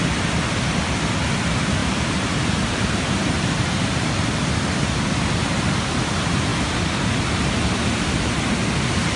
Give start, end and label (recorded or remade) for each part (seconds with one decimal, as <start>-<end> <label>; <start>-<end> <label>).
0.0-1.8 recorded; 1.8-3.6 remade; 3.6-9.2 recorded